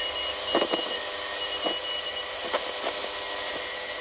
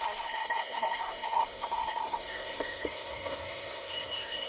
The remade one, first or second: second